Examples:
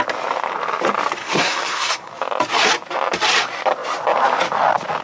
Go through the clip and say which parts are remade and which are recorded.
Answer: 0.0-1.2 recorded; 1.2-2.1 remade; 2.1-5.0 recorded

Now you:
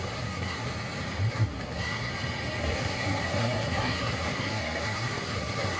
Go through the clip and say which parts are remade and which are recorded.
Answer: 0.0-0.7 remade; 0.7-1.3 recorded; 1.3-2.1 remade; 2.1-2.6 recorded; 2.6-5.8 remade

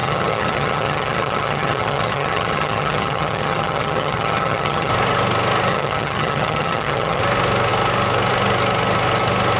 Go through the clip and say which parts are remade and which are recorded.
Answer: 0.0-4.9 remade; 4.9-5.7 recorded; 5.7-7.2 remade; 7.2-9.6 recorded

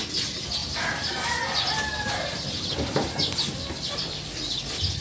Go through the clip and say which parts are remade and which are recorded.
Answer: 0.0-5.0 recorded